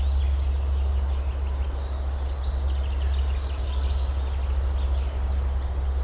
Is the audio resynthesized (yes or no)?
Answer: no